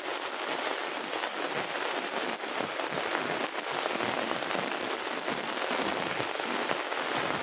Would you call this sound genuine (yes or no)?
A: yes